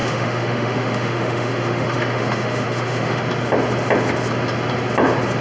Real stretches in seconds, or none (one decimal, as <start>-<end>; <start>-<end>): 3.2-5.4